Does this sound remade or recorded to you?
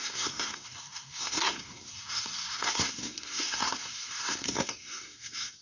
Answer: remade